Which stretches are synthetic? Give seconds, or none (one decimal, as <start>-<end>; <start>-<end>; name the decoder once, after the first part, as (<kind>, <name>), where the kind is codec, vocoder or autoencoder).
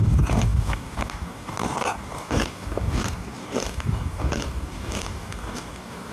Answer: 0.0-6.1 (codec, DAC)